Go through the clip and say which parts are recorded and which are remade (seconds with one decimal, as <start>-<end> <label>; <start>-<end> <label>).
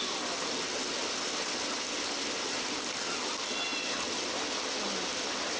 0.0-5.6 recorded